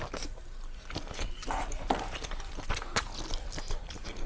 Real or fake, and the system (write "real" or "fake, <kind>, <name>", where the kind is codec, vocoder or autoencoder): real